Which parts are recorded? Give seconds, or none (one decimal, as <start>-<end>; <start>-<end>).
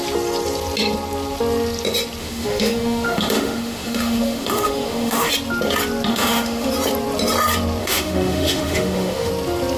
0.0-2.2; 5.3-6.1; 6.7-7.8; 9.3-9.8